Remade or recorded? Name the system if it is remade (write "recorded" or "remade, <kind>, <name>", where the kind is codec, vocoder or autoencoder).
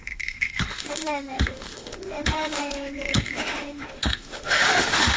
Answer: remade, autoencoder, DAC-VAE